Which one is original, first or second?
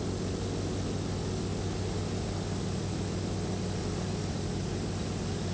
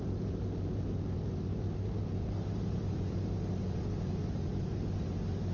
first